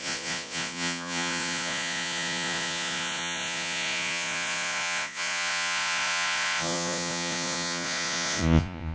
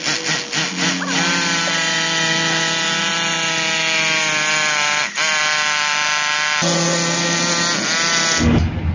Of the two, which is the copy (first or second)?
first